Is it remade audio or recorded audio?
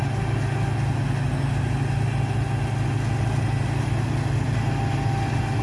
recorded